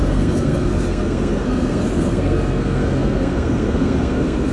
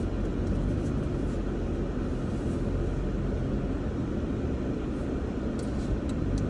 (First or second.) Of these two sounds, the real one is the second